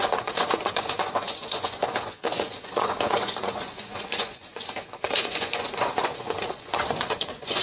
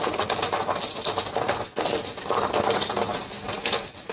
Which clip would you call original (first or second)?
second